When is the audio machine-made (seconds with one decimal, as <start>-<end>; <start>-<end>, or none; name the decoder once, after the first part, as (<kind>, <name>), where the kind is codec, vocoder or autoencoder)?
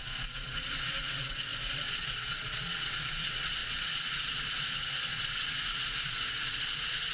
0.0-7.1 (vocoder, Vocos)